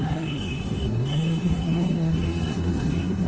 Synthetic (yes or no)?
yes